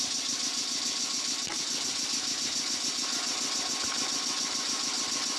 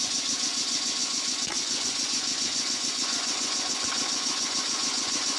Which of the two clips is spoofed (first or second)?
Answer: second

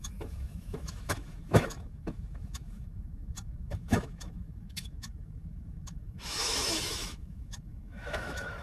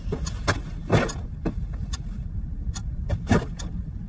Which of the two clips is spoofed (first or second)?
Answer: first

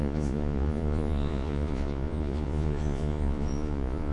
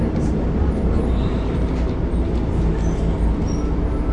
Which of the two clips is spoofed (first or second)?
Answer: first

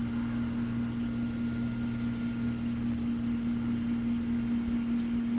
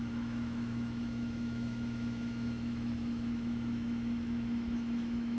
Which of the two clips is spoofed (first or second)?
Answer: second